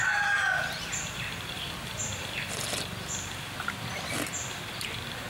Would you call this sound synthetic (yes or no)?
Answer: yes